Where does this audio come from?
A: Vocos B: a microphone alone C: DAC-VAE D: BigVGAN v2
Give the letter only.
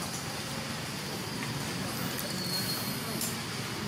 B